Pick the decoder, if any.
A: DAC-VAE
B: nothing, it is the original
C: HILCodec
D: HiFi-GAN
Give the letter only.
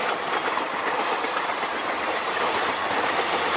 B